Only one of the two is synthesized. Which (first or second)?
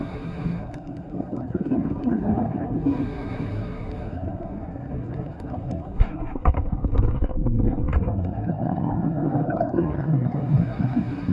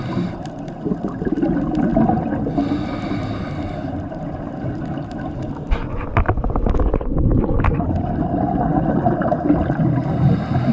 first